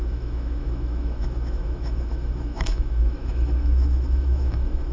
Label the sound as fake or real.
fake